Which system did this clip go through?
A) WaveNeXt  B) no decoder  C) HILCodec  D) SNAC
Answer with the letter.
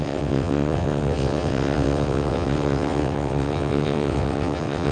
A